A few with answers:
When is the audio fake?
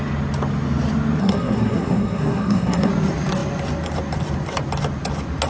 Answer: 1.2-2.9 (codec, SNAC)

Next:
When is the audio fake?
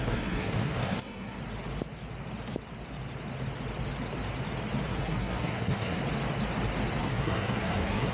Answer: 0.0-1.4 (codec, SNAC); 4.9-6.0; 7.0-8.1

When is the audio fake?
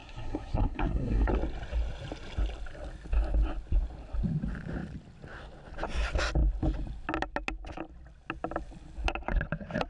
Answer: 0.0-1.3 (codec, SNAC)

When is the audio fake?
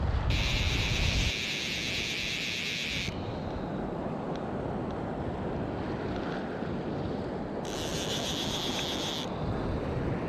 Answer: none